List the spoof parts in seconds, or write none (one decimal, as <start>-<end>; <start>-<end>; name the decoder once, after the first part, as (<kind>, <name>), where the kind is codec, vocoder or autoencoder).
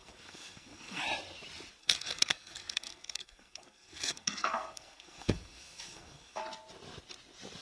0.0-1.0 (codec, SNAC); 1.8-6.4